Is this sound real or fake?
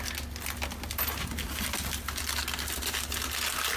real